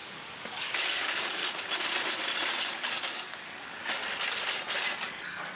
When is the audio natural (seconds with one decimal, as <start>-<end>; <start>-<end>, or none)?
1.4-2.6; 4.0-5.0